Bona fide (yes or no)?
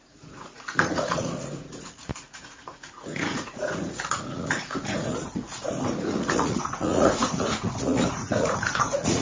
no